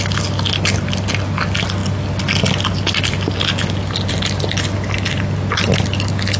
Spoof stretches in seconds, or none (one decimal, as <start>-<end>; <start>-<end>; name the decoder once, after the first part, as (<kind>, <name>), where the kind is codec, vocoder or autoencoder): none